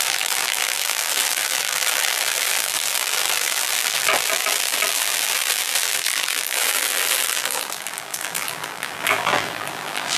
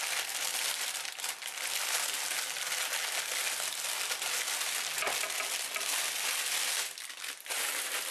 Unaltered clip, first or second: second